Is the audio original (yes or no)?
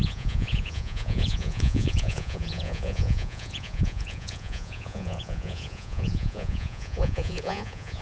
no